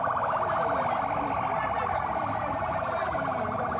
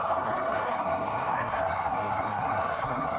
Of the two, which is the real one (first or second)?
first